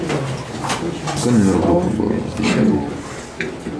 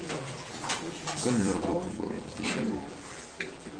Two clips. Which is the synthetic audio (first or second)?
second